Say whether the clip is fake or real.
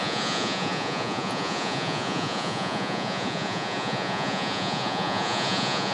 fake